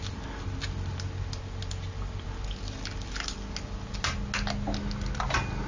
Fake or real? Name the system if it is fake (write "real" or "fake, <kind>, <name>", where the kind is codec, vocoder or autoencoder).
real